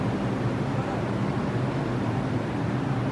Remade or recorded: recorded